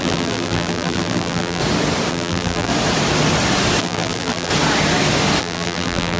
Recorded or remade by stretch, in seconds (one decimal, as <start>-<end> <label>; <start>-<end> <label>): 0.0-1.6 remade; 1.6-2.1 recorded; 2.1-2.7 remade; 2.7-3.8 recorded; 3.8-4.5 remade; 4.5-5.4 recorded; 5.4-6.2 remade